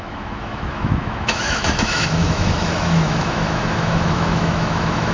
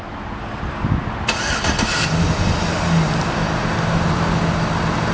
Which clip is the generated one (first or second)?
first